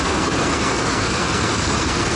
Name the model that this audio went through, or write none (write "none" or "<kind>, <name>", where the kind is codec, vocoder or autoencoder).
codec, SNAC